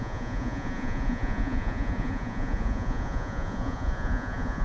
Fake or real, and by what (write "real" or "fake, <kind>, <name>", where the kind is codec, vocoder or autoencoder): fake, vocoder, Vocos